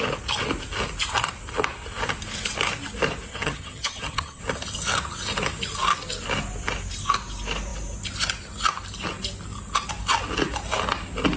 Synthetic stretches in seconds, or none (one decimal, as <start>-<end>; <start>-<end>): 3.3-4.4